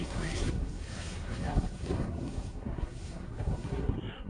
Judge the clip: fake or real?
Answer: fake